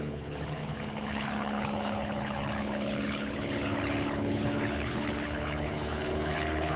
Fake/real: fake